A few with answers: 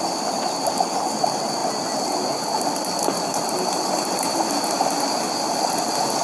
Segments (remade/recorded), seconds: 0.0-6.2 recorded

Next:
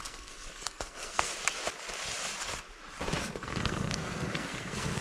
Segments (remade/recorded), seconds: 0.0-1.3 remade; 1.3-3.2 recorded; 3.2-5.0 remade

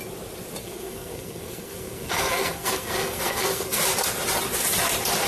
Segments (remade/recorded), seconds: 0.0-0.6 recorded; 0.6-3.8 remade; 3.8-5.3 recorded

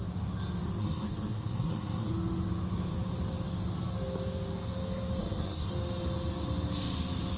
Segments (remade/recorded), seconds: 0.0-0.8 recorded; 0.8-2.1 remade; 2.1-5.2 recorded; 5.2-5.7 remade; 5.7-7.4 recorded

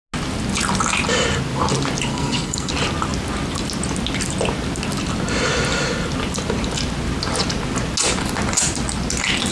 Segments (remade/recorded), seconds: 0.0-2.1 recorded; 2.1-2.7 remade; 2.7-9.5 recorded

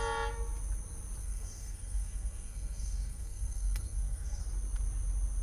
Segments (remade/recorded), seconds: 0.0-1.2 recorded; 1.2-4.4 remade; 4.4-5.4 recorded